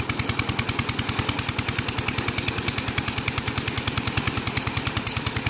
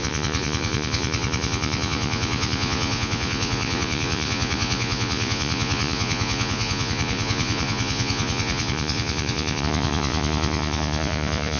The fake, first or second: second